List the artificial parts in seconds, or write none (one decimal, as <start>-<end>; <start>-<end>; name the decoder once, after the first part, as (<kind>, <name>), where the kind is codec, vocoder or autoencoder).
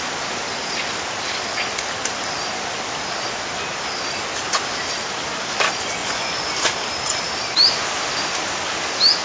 6.0-6.5 (vocoder, Vocos)